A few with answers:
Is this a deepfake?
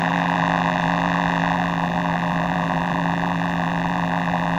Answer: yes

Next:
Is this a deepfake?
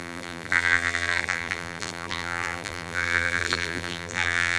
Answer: yes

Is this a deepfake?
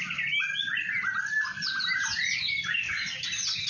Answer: no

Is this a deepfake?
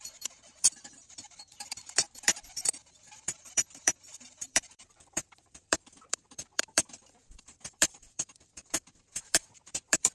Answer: yes